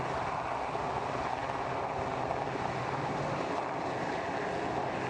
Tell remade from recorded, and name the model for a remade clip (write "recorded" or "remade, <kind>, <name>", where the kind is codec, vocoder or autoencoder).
recorded